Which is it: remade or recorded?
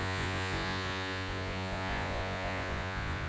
remade